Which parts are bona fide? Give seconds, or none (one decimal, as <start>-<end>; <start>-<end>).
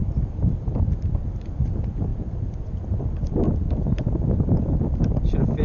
0.0-5.6